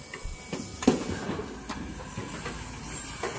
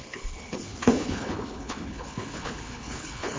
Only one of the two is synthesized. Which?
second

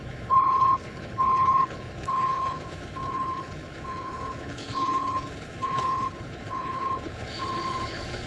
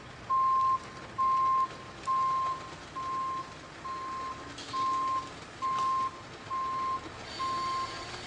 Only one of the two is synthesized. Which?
first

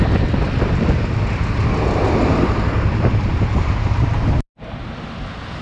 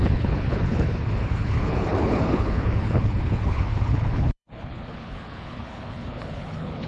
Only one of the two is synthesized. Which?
second